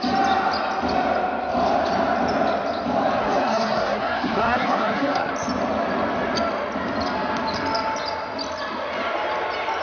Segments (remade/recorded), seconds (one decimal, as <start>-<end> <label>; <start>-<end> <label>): 0.0-3.2 recorded; 3.2-5.3 remade; 5.3-9.8 recorded